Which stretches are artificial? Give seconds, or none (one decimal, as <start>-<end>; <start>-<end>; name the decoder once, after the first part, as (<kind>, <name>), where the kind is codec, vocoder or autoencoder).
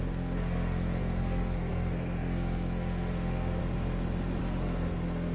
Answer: 0.0-3.6 (codec, SNAC); 4.4-5.3